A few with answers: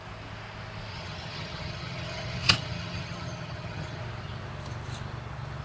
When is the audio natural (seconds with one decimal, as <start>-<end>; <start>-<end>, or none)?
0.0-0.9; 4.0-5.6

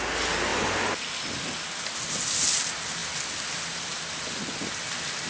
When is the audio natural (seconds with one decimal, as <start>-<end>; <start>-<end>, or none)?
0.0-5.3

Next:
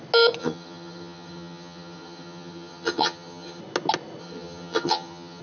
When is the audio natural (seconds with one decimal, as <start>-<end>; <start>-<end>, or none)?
0.0-0.4; 3.6-4.2

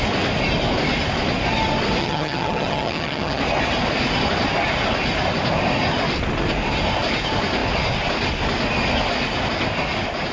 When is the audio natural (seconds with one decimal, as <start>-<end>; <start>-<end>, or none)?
0.0-2.0; 3.4-10.3

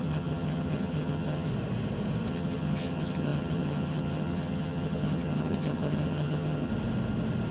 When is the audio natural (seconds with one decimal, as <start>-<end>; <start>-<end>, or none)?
1.5-2.3; 6.7-7.5

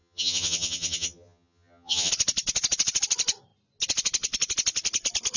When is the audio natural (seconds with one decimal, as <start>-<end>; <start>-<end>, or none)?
2.1-5.4

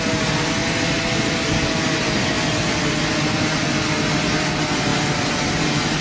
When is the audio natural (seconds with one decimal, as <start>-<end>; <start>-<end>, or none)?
0.0-6.0

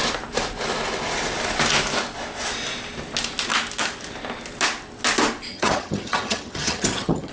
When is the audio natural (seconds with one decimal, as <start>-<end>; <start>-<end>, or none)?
0.0-5.5